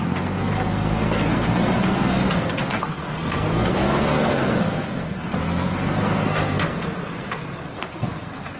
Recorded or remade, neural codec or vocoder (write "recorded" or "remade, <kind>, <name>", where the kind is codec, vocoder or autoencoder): remade, codec, SNAC